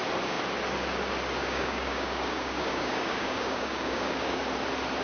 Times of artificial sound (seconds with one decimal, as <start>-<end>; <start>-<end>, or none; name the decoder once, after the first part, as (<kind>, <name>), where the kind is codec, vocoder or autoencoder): 1.4-4.4 (codec, DAC)